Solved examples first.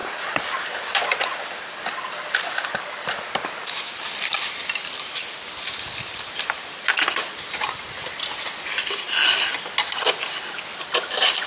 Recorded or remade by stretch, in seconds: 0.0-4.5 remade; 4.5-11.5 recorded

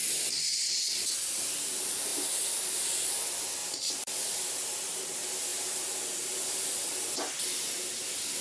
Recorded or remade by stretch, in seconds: 0.0-3.6 recorded; 3.6-4.5 remade; 4.5-8.4 recorded

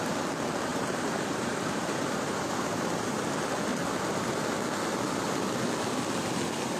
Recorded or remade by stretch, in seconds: 0.0-0.7 recorded; 0.7-3.3 remade; 3.3-6.8 recorded

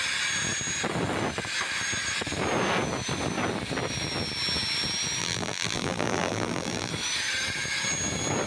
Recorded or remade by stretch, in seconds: 0.0-5.2 recorded; 5.2-6.9 remade; 6.9-8.5 recorded

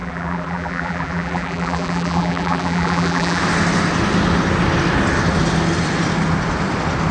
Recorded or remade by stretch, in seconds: 0.0-3.4 remade; 3.4-7.1 recorded

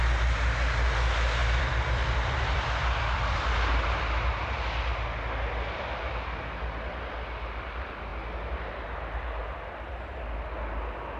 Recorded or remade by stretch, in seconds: 0.0-1.4 recorded; 1.4-4.0 remade; 4.0-11.2 recorded